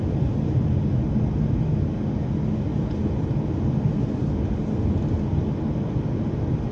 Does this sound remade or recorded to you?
recorded